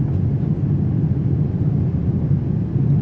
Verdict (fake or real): real